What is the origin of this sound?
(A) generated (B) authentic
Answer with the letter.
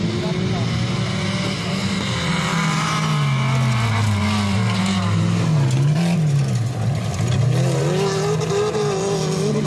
B